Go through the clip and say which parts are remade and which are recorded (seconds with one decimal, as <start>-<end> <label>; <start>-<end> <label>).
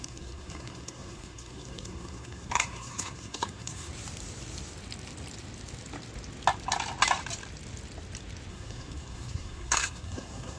0.0-3.9 remade; 3.9-8.5 recorded; 8.5-10.6 remade